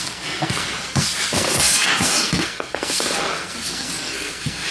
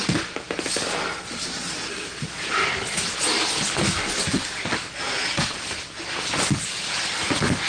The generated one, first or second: first